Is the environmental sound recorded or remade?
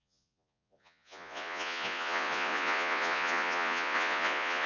remade